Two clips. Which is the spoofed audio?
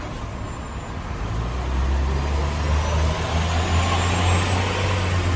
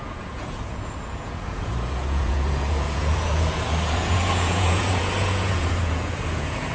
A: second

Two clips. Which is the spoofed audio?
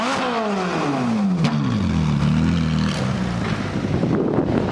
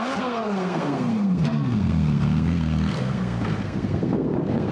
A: second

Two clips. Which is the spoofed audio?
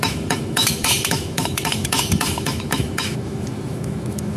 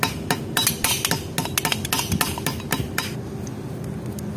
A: first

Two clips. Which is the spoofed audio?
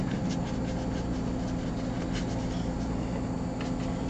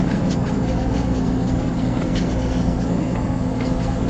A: second